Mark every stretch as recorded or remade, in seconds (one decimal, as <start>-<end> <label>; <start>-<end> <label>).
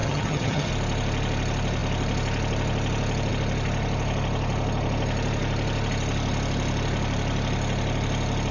0.0-0.7 remade; 0.7-8.5 recorded